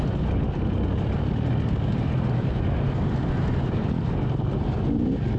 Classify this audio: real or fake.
real